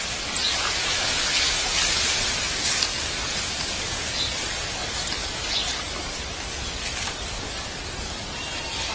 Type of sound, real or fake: real